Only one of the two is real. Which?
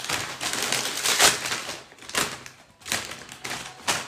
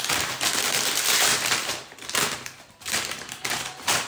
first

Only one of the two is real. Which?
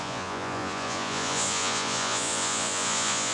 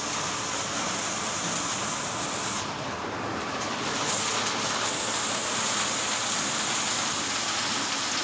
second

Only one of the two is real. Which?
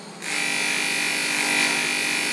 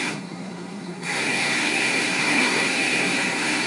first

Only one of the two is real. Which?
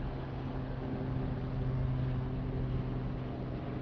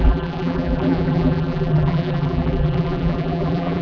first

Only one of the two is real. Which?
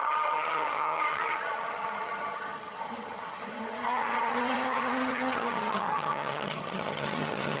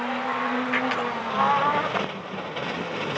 second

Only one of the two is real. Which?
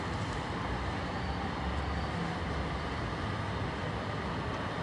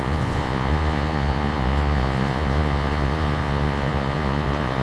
first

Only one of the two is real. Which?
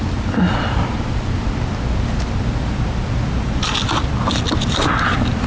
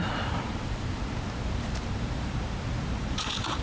first